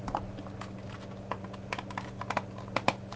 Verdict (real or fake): real